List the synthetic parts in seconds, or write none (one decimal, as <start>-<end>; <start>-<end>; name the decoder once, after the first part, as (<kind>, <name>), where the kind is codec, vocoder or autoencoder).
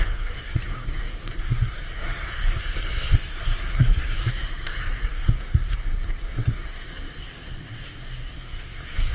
0.0-9.1 (codec, SNAC)